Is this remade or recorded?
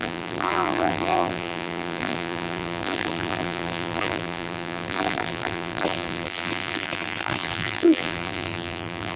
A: remade